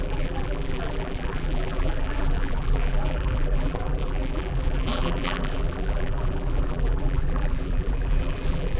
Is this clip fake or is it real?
fake